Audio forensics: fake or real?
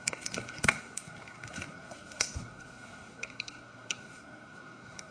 fake